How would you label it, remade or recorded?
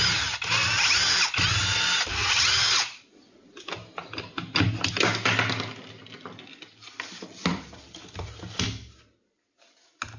recorded